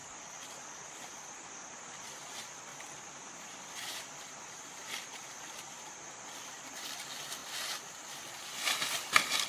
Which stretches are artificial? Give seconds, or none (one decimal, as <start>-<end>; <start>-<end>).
2.0-7.4; 8.3-9.5